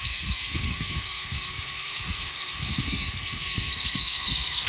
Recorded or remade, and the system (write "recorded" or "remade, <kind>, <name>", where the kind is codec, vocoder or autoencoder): remade, codec, SNAC